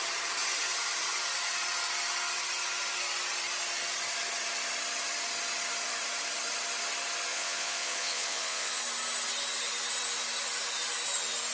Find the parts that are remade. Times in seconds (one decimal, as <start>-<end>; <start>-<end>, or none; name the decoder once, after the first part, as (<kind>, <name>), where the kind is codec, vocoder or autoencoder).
7.3-8.8 (vocoder, Vocos)